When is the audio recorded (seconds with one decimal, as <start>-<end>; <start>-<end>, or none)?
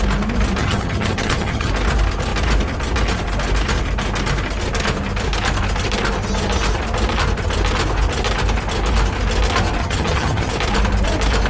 0.0-0.6; 1.7-9.8; 10.5-11.5